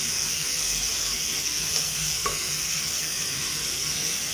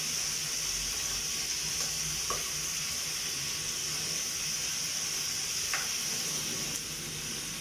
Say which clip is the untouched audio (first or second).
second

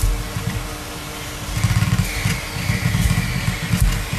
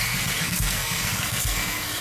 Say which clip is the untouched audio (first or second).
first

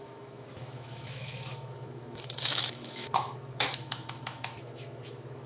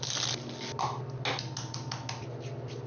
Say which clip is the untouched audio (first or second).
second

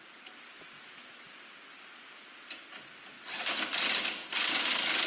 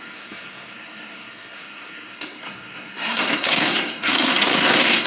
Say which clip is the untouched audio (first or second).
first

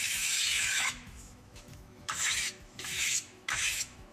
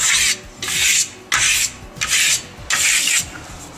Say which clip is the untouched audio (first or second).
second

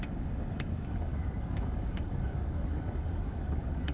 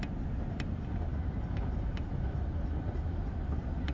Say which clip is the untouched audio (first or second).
second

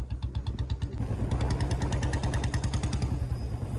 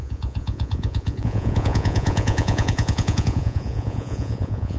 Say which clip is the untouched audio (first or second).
first